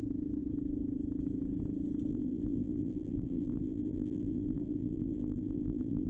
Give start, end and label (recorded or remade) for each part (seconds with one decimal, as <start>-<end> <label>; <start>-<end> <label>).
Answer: 0.0-2.1 recorded; 2.1-6.1 remade

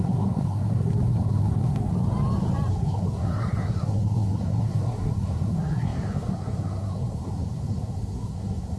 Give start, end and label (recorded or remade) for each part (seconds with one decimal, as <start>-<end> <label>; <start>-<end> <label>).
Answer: 0.0-1.9 remade; 1.9-2.7 recorded; 2.7-8.8 remade

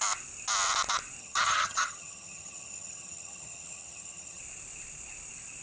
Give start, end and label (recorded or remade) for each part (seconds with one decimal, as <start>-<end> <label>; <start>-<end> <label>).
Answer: 0.0-1.2 recorded; 1.2-4.4 remade; 4.4-5.6 recorded

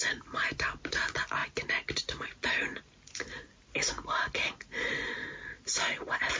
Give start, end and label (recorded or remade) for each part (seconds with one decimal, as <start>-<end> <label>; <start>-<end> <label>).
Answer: 0.0-6.4 recorded

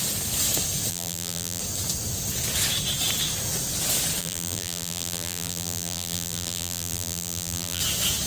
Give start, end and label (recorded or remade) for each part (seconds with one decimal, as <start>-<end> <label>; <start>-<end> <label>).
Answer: 0.0-0.9 recorded; 0.9-1.6 remade; 1.6-4.2 recorded; 4.2-7.8 remade; 7.8-8.3 recorded